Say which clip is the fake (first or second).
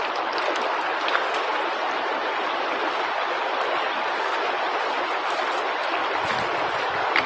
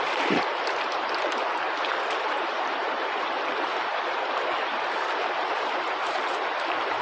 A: second